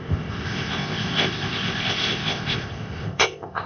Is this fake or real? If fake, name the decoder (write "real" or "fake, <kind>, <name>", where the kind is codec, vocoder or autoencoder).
fake, codec, ZipCodec